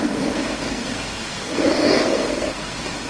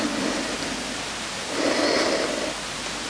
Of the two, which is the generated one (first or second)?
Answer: first